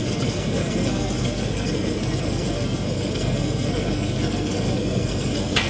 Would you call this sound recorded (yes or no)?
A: no